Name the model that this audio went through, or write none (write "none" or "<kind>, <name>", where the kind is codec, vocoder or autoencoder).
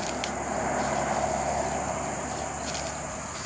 none